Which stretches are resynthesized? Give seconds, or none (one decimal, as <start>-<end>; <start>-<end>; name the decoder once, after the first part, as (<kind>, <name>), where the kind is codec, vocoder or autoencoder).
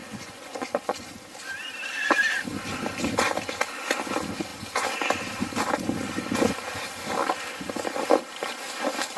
0.0-1.0 (vocoder, Vocos)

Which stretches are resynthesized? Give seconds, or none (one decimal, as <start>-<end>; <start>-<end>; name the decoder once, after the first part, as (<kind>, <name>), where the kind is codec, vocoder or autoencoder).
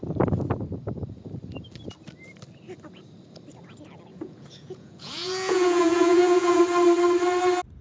4.1-6.6 (vocoder, Vocos)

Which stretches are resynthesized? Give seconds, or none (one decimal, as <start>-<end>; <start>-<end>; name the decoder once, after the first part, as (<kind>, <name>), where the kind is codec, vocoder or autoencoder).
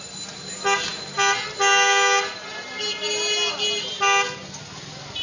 none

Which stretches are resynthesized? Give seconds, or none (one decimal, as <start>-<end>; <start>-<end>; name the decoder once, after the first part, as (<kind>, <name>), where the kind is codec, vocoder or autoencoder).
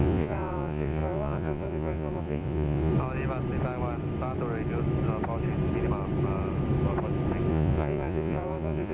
0.0-2.9 (vocoder, Vocos); 7.5-8.9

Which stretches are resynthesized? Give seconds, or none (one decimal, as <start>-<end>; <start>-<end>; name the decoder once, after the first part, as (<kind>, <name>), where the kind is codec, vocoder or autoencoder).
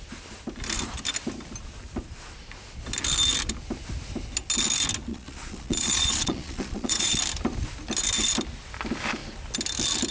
5.1-7.1 (vocoder, Vocos)